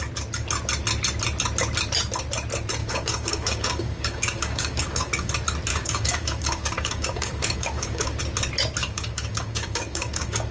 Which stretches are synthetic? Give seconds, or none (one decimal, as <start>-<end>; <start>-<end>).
2.8-5.3; 5.7-8.2; 8.8-10.5